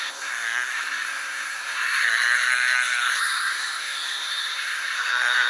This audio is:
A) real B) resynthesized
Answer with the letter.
B